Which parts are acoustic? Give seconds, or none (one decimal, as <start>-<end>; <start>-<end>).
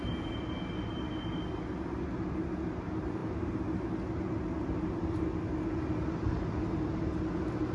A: 0.0-7.7